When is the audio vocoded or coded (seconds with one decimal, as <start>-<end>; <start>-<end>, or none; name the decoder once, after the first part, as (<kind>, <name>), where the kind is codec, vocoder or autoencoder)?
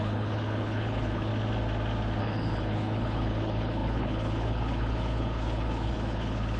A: 0.0-1.3 (codec, HILCodec); 2.2-6.6